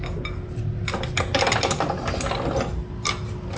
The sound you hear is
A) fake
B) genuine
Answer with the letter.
B